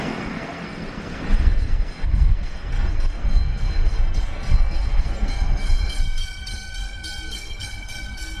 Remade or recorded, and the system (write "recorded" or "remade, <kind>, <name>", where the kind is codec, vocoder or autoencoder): remade, codec, SNAC